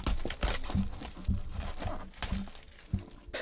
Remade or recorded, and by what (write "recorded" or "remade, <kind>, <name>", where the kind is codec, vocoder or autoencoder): recorded